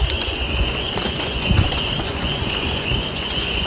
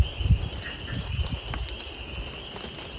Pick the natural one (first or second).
second